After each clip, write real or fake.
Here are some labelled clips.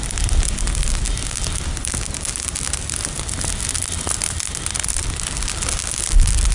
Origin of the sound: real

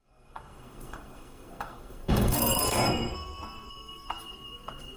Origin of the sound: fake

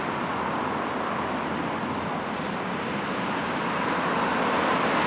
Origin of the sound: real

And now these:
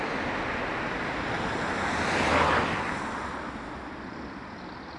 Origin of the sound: fake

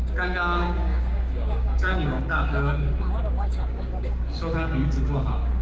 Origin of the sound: fake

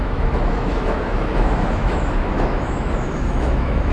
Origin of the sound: fake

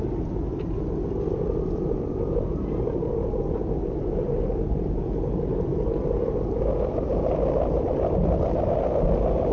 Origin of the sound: real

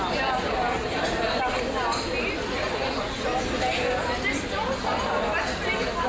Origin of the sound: real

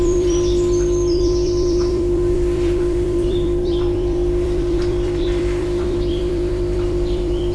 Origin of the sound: fake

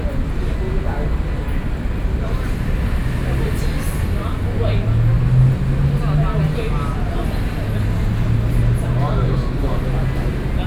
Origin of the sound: real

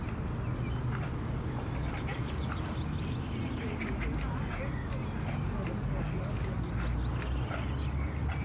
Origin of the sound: real